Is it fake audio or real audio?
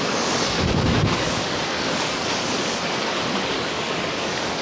fake